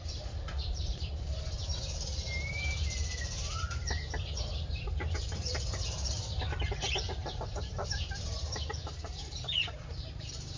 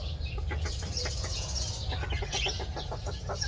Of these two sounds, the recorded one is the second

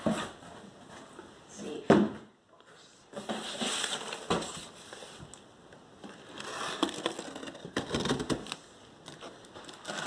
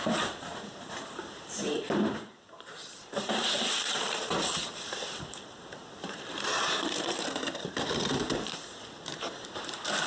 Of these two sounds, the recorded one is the first